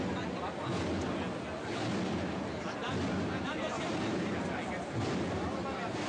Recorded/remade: recorded